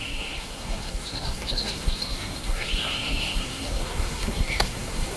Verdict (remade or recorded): remade